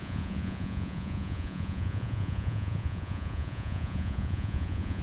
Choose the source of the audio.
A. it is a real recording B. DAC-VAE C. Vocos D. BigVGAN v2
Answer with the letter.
C